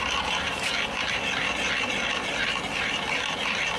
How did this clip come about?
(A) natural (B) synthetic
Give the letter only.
A